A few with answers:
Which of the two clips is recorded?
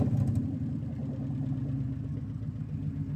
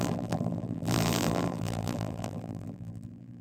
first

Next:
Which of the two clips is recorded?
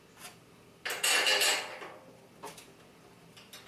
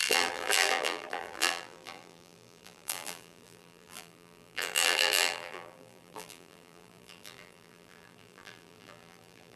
first